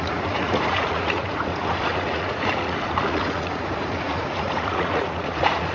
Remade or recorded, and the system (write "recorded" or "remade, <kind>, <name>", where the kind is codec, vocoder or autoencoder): remade, vocoder, Vocos